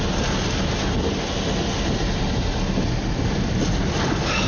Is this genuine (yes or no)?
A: yes